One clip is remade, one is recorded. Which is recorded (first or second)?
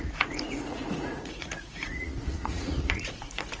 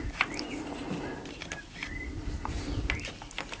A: second